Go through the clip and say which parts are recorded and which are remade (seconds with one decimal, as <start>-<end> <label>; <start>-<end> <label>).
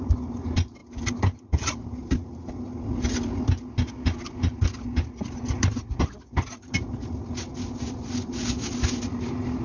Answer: 0.0-9.6 recorded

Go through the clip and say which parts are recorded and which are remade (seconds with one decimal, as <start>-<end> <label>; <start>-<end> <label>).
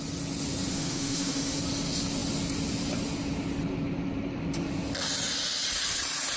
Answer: 0.0-0.7 recorded; 0.7-1.6 remade; 1.6-6.4 recorded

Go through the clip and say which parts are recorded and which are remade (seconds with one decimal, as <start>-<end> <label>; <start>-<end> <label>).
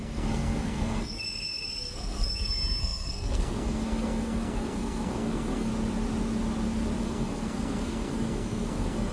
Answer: 0.0-1.2 remade; 1.2-1.9 recorded; 1.9-5.7 remade; 5.7-7.0 recorded; 7.0-9.1 remade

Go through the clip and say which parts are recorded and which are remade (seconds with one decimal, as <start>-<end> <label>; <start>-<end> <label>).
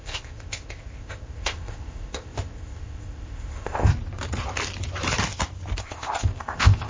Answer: 0.0-3.9 remade; 3.9-5.8 recorded; 5.8-6.9 remade